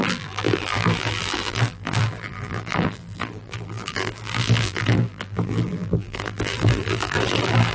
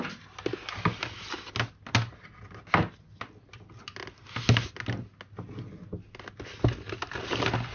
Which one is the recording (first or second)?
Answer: second